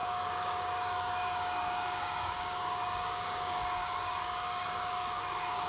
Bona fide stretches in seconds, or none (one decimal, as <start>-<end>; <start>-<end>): none